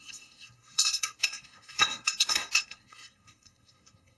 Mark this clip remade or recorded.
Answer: remade